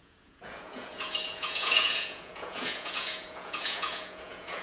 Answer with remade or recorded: remade